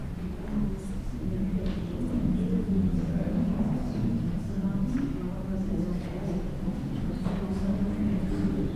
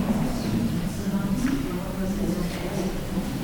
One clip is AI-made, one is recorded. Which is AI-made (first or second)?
second